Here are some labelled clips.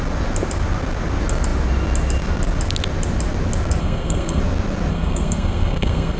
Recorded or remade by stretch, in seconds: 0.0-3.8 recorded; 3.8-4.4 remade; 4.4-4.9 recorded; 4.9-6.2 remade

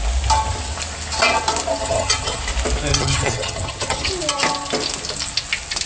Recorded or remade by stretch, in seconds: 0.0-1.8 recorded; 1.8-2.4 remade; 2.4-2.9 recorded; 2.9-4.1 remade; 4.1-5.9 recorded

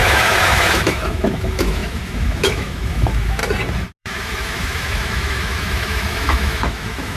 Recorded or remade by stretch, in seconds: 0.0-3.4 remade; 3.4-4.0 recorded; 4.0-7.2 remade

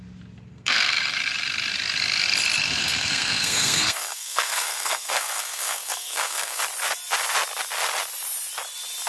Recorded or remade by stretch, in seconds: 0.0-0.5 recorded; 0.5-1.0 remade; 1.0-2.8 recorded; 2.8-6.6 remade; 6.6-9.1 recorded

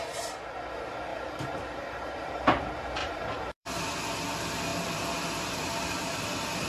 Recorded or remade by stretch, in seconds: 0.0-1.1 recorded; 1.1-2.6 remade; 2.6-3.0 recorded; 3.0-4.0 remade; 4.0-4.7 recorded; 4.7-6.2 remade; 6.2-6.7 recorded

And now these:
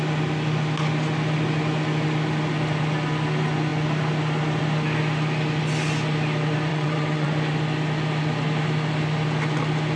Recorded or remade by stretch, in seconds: 0.0-6.7 recorded; 6.7-7.3 remade; 7.3-10.0 recorded

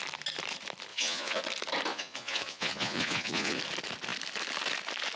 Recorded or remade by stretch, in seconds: 0.0-0.9 recorded; 0.9-1.4 remade; 1.4-1.9 recorded; 1.9-3.6 remade; 3.6-5.2 recorded

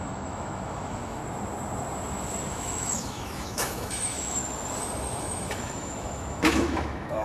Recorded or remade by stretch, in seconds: 0.0-1.2 remade; 1.2-2.5 recorded; 2.5-4.4 remade; 4.4-5.2 recorded; 5.2-7.2 remade